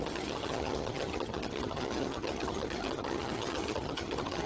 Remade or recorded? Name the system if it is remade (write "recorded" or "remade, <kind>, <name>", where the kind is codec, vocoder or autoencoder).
remade, vocoder, HiFi-GAN